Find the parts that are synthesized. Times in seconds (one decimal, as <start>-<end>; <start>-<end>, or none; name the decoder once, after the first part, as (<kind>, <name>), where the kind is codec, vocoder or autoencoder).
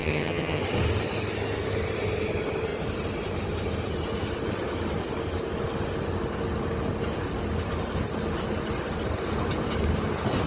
0.0-0.6 (vocoder, HiFi-GAN)